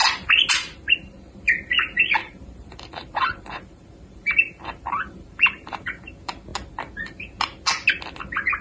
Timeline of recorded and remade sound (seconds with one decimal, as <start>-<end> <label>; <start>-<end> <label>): 0.0-2.2 recorded; 2.2-6.0 remade; 6.0-8.6 recorded